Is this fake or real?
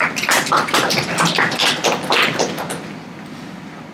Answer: real